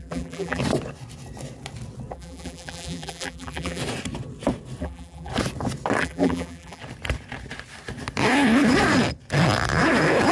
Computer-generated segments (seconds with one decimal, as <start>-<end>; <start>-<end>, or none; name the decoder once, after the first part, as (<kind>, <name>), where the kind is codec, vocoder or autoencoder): 0.0-0.6 (vocoder, BigVGAN v2); 2.1-3.8; 4.8-5.3; 6.0-6.8